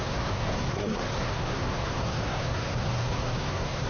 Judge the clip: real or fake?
fake